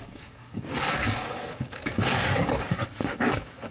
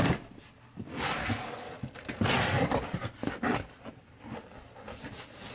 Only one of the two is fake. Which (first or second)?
first